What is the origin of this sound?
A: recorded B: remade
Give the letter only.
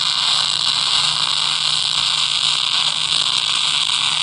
A